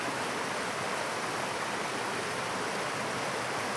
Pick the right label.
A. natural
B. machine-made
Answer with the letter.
A